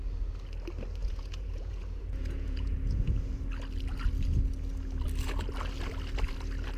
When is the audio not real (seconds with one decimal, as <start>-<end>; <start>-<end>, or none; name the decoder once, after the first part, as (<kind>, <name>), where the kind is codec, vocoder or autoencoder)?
1.0-3.1 (vocoder, Vocos)